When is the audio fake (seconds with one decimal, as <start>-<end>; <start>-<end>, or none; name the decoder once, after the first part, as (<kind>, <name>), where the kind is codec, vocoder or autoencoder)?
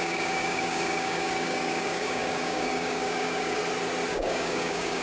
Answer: 0.0-3.6 (codec, DAC); 4.1-5.0